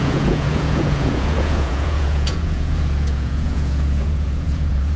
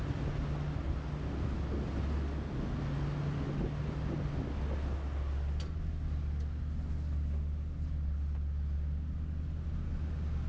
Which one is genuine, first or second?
second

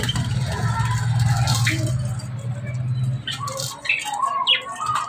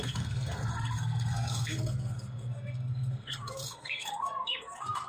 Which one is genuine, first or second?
first